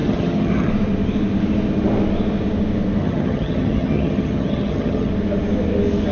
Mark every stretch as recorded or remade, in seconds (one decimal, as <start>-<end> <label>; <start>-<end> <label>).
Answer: 0.0-0.7 remade; 0.7-3.0 recorded; 3.0-5.1 remade; 5.1-6.1 recorded

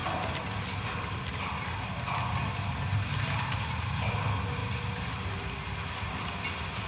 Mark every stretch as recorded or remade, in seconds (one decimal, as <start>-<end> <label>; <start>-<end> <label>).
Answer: 0.0-6.9 recorded

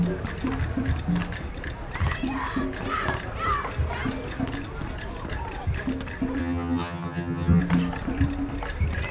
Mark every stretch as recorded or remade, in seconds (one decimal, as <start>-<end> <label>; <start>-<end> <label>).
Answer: 0.0-6.4 recorded; 6.4-7.6 remade; 7.6-9.1 recorded

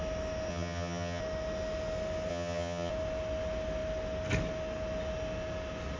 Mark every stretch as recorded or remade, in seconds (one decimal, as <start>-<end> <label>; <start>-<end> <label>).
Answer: 0.0-0.5 recorded; 0.5-1.2 remade; 1.2-2.3 recorded; 2.3-2.9 remade; 2.9-6.0 recorded

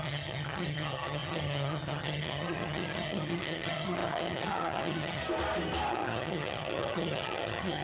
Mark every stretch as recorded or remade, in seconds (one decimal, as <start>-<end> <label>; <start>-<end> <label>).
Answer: 0.0-5.2 remade; 5.2-5.9 recorded; 5.9-7.8 remade